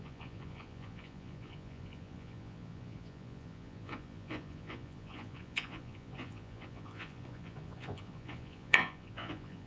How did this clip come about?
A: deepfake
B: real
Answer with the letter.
A